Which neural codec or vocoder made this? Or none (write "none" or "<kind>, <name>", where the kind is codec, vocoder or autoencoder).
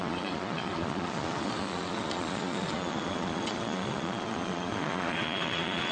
vocoder, Vocos